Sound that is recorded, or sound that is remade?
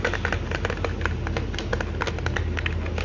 recorded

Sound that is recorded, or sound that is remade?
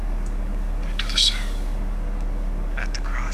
remade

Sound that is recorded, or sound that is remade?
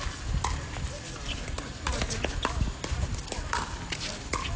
recorded